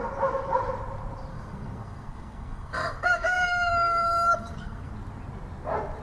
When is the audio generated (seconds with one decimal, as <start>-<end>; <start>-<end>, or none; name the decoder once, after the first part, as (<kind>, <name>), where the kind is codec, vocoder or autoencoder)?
1.3-4.9 (codec, SNAC)